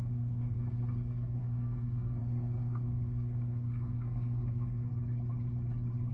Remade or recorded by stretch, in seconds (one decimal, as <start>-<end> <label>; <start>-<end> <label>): 0.0-4.9 remade; 4.9-6.1 recorded